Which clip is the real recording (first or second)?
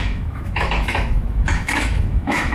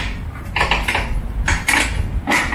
second